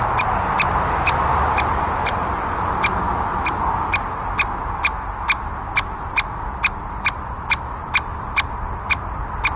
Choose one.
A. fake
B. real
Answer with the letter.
B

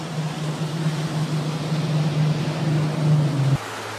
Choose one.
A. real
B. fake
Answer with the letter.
A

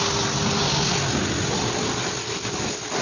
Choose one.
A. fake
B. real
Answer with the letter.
B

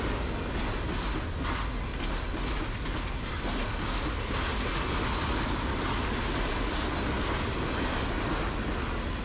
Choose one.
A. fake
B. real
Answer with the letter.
B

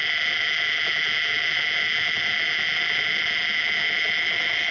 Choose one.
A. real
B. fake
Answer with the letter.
A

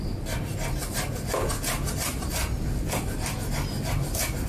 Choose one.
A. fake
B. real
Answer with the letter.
B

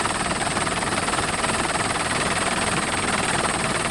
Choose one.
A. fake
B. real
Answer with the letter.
B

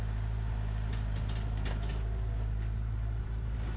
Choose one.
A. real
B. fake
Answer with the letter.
A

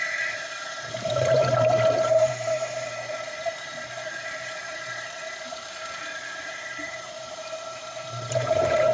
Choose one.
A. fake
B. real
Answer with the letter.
A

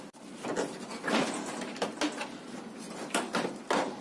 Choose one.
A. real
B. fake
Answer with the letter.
A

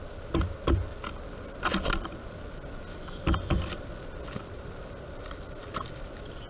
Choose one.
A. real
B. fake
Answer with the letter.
A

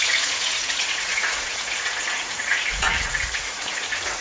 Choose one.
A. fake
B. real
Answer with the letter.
A